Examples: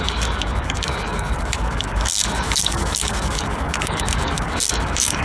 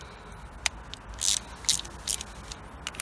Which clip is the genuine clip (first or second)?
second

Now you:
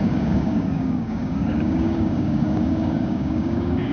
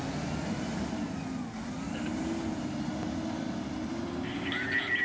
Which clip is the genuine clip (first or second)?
second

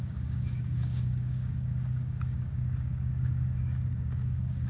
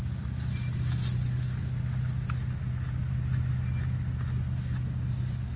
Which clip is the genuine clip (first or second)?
second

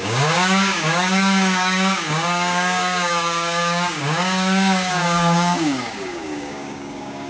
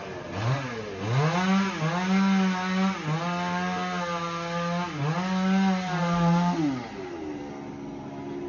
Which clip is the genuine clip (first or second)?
second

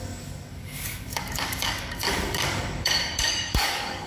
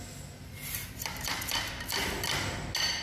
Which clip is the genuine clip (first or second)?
second